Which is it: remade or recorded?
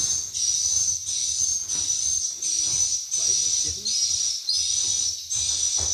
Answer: recorded